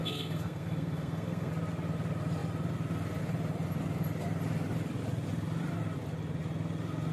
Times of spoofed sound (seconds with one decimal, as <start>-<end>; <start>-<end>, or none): 0.0-1.5